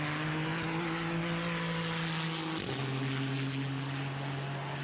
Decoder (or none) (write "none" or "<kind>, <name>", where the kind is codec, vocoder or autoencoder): none